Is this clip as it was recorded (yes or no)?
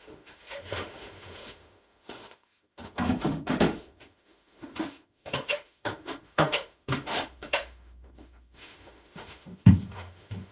no